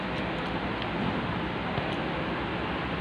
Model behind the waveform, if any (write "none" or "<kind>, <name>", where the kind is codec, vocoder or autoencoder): none